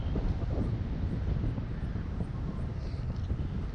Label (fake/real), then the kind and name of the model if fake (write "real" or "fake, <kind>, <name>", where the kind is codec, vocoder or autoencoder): real